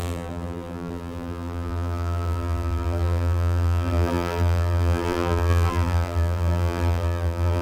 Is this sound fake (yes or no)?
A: yes